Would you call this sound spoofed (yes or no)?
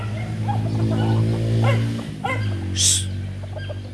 no